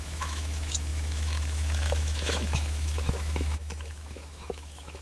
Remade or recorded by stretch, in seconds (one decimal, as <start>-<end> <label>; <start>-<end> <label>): 0.0-5.0 remade